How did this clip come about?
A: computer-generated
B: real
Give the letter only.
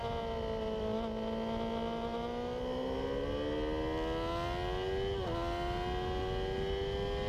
B